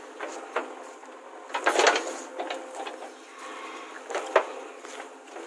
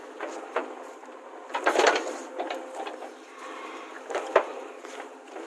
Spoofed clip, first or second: second